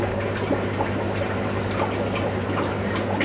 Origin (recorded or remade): recorded